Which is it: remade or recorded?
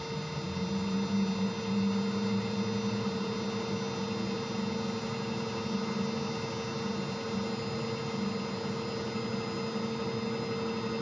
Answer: recorded